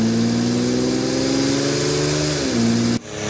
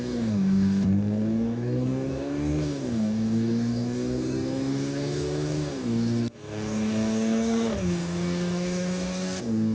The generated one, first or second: second